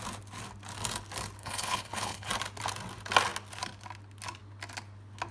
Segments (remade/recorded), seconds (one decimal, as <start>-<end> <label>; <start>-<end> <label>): 0.0-1.4 recorded; 1.4-2.3 remade; 2.3-5.3 recorded